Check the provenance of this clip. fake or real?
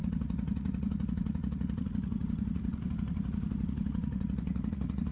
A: fake